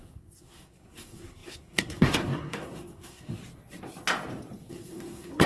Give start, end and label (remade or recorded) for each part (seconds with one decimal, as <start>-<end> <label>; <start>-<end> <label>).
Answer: 0.0-3.4 remade; 3.4-4.7 recorded; 4.7-5.5 remade